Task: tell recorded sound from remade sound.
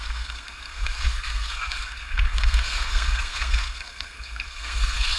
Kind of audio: remade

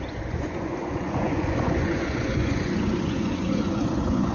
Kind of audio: remade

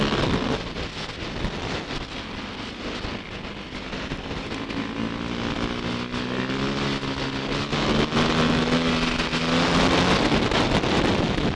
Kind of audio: recorded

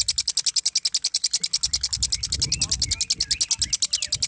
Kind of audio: recorded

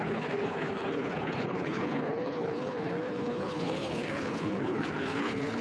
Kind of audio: remade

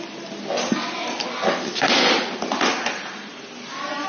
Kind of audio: recorded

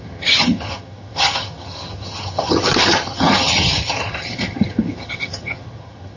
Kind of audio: remade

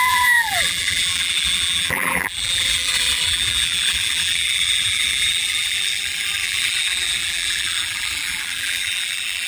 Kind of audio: remade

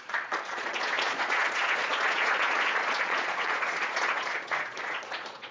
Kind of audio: remade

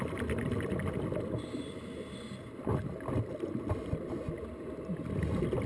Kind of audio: recorded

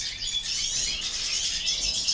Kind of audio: remade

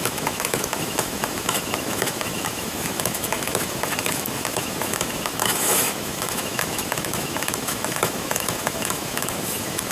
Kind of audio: remade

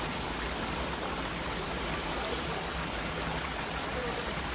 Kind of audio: recorded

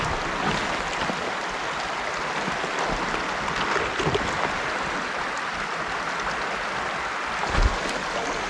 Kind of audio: recorded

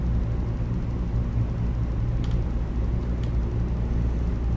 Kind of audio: recorded